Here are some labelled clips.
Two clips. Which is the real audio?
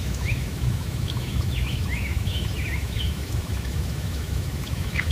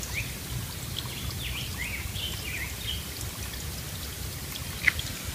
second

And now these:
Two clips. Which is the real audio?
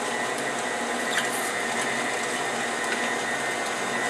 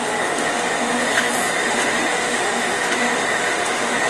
first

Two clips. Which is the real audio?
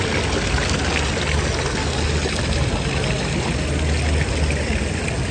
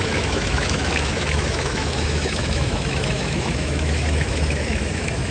first